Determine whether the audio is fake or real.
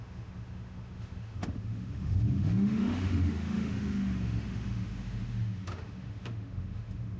fake